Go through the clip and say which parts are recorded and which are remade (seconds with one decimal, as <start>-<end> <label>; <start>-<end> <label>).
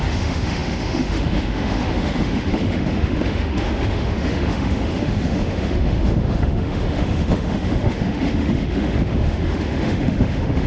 0.0-10.7 remade